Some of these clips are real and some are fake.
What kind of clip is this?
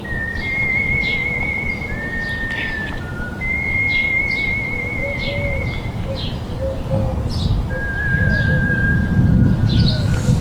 real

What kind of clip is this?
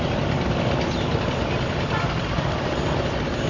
real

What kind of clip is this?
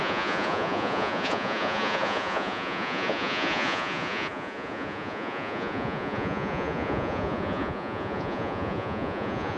fake